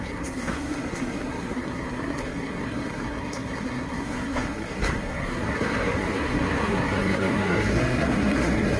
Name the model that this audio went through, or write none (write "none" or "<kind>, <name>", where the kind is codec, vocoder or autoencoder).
codec, SNAC